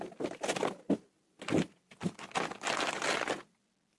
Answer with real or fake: real